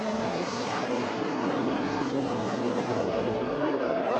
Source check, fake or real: fake